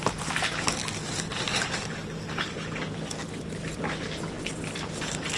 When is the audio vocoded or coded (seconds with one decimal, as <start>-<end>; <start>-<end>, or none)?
none